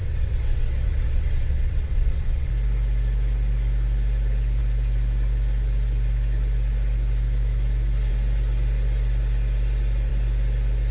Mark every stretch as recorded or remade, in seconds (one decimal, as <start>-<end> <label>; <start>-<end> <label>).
0.0-2.5 remade; 2.5-10.9 recorded